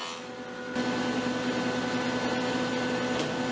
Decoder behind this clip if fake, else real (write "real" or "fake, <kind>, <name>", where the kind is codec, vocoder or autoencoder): real